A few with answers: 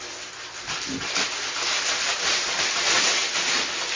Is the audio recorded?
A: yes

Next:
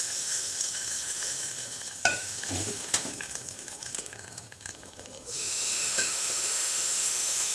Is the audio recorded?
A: no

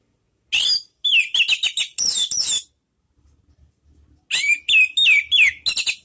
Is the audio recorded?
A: yes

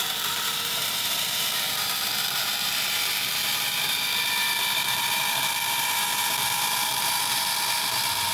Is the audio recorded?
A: no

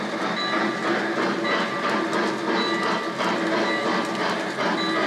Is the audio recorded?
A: yes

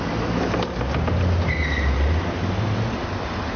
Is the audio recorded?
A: yes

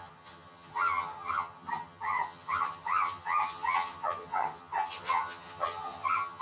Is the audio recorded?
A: no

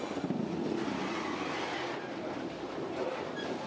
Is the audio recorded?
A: yes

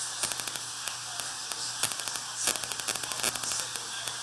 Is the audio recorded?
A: yes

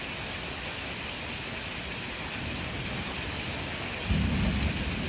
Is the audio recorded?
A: yes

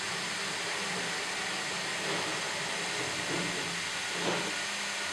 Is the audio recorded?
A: yes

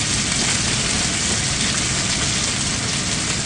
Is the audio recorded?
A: yes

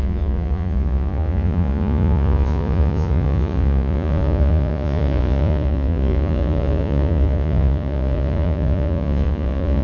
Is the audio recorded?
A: no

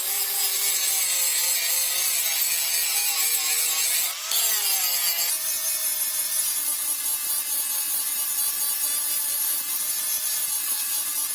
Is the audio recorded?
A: yes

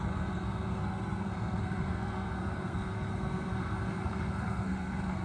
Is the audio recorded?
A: no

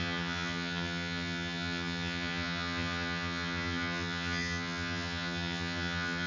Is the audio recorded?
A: no